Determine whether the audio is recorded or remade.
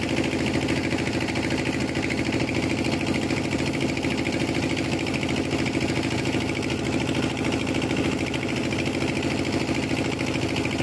recorded